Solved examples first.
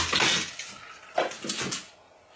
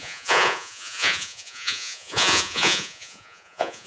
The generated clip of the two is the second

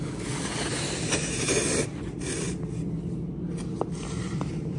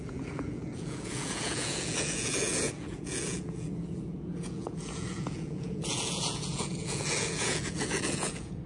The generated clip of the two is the second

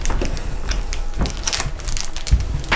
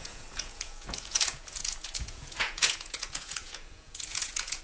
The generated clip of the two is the second